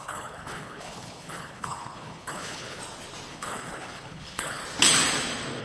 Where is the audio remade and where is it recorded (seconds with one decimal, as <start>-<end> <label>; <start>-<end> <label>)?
0.0-2.8 remade; 2.8-3.3 recorded; 3.3-4.6 remade; 4.6-5.6 recorded